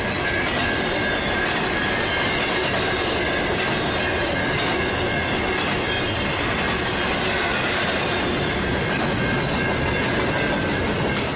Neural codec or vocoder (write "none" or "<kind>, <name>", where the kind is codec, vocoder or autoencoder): none